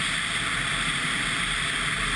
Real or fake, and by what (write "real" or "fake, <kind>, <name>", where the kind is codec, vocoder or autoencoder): real